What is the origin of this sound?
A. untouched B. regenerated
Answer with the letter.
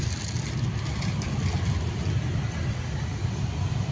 A